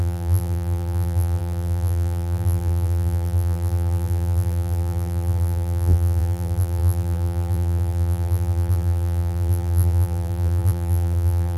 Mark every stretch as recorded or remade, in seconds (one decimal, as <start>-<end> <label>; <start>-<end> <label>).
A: 0.0-11.6 remade